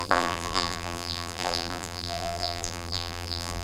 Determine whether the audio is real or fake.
fake